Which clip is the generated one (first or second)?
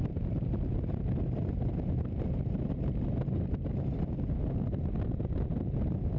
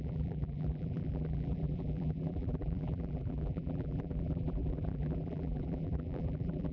second